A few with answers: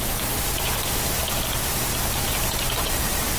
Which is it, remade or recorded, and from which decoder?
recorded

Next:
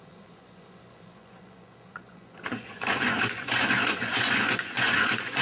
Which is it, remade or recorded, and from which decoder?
remade, vocoder, Vocos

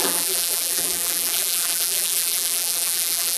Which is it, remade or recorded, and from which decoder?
remade, vocoder, BigVGAN v2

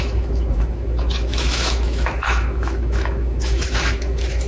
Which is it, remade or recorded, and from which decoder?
remade, autoencoder, DAC-VAE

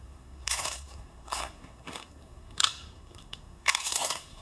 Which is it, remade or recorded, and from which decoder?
remade, codec, SNAC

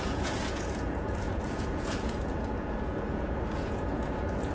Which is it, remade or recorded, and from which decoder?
remade, vocoder, Vocos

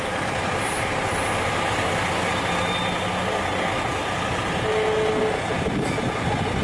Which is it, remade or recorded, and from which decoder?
recorded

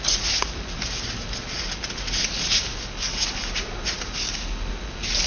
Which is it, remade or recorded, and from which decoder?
recorded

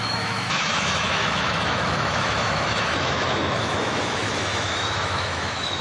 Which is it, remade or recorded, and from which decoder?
remade, autoencoder, DAC-VAE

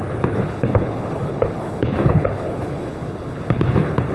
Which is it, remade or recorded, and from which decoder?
remade, codec, HILCodec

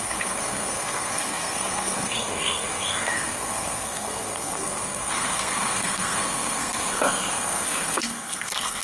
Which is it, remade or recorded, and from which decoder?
remade, codec, SNAC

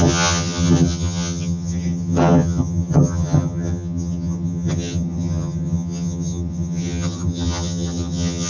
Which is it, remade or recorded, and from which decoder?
remade, vocoder, HiFi-GAN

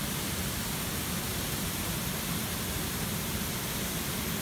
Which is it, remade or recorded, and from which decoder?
recorded